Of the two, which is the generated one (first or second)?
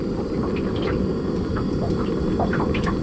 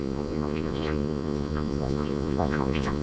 second